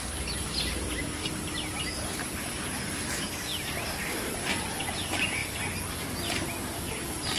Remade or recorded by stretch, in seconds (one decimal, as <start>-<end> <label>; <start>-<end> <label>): 0.0-1.2 recorded; 1.2-1.8 remade; 1.8-3.5 recorded; 3.5-4.6 remade; 4.6-7.4 recorded